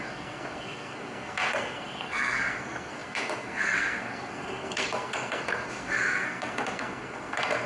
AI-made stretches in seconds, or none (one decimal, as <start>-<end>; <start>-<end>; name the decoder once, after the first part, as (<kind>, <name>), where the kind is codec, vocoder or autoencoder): 0.0-7.7 (codec, SNAC)